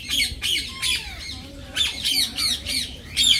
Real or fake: fake